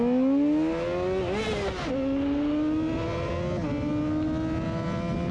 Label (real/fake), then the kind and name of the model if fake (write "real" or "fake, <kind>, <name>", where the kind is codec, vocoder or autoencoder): real